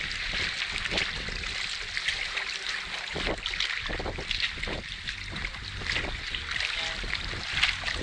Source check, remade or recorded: recorded